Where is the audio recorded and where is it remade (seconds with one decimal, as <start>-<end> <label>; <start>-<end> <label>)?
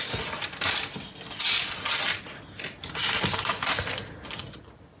0.0-5.0 recorded